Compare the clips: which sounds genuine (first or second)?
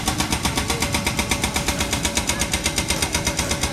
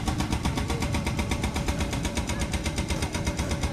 first